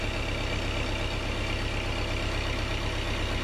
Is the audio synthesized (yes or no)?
no